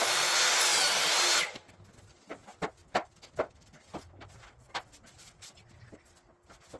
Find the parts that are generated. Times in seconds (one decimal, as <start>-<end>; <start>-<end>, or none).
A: 0.7-1.6; 2.8-5.6